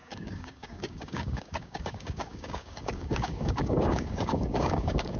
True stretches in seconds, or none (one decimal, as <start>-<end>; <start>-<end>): none